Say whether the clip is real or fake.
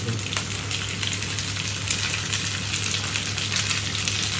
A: real